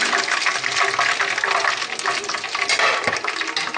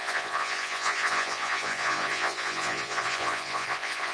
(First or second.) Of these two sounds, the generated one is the second